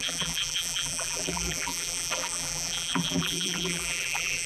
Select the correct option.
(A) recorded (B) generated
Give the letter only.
B